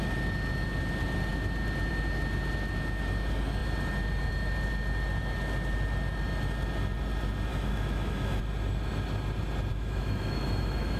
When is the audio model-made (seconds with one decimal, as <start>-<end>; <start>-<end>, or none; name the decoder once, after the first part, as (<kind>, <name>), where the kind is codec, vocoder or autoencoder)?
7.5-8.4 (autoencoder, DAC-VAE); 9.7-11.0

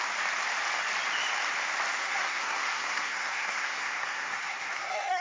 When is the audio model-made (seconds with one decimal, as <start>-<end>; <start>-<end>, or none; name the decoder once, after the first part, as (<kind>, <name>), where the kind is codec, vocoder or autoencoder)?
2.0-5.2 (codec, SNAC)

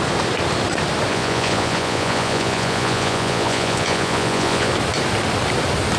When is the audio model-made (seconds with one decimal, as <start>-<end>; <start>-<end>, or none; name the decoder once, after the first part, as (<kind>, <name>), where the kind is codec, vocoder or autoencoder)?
1.1-4.7 (vocoder, Vocos)

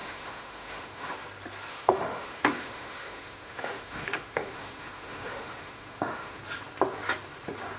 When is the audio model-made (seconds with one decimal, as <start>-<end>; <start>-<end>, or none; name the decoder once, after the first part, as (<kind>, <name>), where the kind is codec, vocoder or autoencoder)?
0.0-1.1 (autoencoder, DAC-VAE); 1.7-6.4

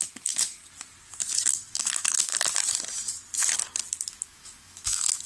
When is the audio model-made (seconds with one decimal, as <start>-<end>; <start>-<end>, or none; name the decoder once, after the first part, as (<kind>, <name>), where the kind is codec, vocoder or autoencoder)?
0.0-0.6 (autoencoder, DAC-VAE); 1.5-2.3; 4.1-5.3

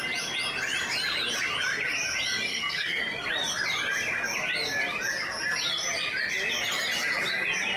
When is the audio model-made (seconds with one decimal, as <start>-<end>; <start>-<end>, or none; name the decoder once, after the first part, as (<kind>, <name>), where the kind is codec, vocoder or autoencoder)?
2.5-3.0 (codec, SNAC)

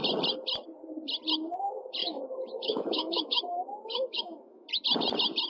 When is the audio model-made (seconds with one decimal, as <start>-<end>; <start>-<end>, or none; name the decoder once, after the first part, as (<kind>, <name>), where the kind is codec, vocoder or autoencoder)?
2.0-4.7 (autoencoder, DAC-VAE)